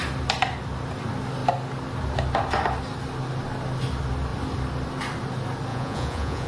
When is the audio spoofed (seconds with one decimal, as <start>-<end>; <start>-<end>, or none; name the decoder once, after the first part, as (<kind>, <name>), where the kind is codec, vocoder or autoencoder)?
5.7-6.5 (vocoder, Vocos)